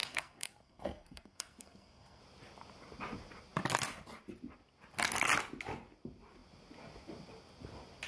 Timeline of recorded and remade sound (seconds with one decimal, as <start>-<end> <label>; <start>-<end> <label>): 0.0-2.2 remade; 2.2-8.1 recorded